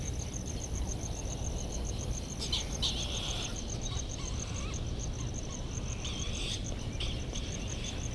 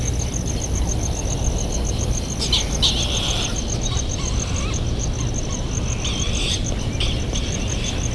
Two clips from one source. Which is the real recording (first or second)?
second